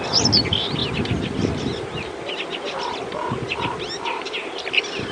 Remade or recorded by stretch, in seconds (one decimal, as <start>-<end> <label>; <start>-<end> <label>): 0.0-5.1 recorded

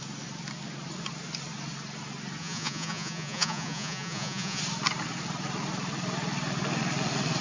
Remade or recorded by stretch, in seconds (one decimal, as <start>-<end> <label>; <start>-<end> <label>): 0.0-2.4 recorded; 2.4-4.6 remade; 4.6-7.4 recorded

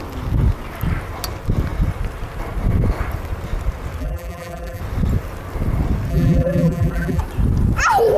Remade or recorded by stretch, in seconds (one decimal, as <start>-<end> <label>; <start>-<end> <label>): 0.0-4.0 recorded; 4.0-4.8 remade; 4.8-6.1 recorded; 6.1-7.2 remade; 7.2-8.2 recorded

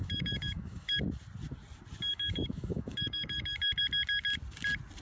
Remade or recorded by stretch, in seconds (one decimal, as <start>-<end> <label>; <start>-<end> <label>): 0.0-1.0 remade; 1.0-2.1 recorded; 2.1-3.8 remade; 3.8-5.0 recorded